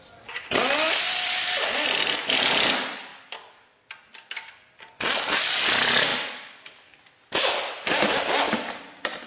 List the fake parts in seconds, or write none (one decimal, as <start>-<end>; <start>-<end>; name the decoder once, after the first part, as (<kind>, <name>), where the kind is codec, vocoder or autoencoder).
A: none